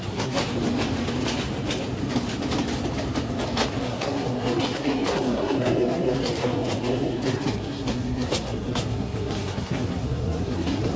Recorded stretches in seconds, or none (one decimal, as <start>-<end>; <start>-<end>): 0.4-3.8